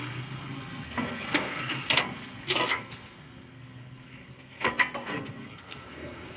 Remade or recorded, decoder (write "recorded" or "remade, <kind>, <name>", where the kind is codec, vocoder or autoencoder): remade, codec, SNAC